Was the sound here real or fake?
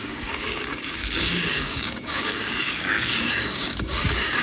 fake